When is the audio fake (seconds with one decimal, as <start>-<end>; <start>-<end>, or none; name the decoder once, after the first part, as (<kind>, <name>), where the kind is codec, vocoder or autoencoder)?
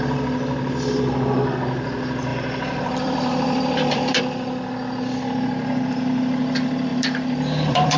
2.3-4.2 (vocoder, BigVGAN v2); 6.9-8.0